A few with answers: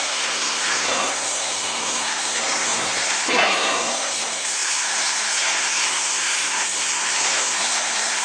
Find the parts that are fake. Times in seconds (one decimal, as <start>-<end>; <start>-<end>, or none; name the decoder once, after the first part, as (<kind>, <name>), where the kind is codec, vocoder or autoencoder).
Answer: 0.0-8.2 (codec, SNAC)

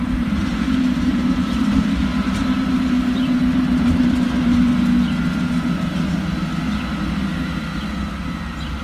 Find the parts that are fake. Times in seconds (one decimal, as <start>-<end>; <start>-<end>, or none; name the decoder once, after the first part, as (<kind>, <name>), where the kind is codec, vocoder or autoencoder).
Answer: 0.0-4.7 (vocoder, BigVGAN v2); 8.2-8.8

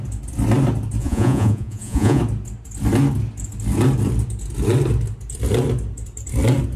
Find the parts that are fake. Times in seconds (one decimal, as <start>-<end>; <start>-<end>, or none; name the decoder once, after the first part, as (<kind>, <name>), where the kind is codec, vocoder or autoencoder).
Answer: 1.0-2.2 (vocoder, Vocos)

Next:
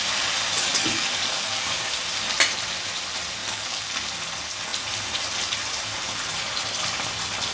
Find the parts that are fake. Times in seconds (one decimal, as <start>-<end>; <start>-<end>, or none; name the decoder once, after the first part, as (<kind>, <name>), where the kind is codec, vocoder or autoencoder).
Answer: 0.7-1.9 (codec, DAC); 3.4-3.9

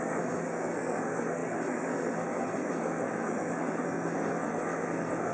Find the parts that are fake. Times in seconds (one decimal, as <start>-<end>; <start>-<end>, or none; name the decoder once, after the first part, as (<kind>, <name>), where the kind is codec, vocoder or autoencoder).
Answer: 0.0-5.3 (codec, SNAC)

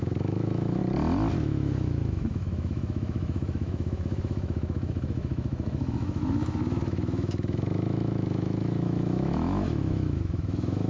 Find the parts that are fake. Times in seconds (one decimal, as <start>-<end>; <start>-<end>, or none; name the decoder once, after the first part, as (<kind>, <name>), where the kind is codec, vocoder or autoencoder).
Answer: 0.0-0.8 (autoencoder, DAC-VAE); 1.4-10.9